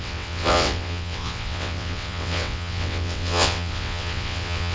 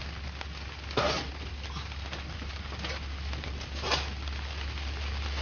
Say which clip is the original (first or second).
second